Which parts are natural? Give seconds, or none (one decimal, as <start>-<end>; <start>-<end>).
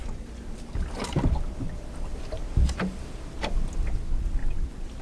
0.0-5.0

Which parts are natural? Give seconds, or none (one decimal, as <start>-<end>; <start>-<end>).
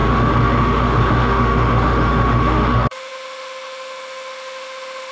none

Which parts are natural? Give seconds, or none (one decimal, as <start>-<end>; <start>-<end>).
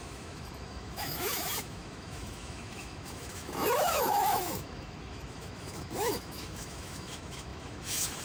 none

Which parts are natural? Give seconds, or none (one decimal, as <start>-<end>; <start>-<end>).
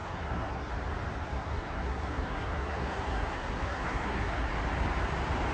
0.7-1.2; 4.5-5.5